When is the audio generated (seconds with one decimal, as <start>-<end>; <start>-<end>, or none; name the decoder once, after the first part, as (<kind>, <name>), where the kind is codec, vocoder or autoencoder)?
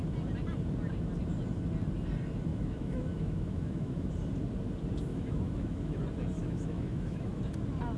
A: 2.5-4.1 (autoencoder, DAC-VAE); 5.1-6.0; 6.4-7.4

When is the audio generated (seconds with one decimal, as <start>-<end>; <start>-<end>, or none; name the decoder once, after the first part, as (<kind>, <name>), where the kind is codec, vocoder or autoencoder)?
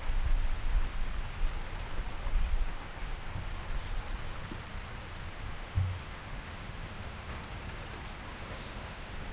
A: 2.7-3.3 (autoencoder, DAC-VAE); 5.3-7.3; 8.3-9.3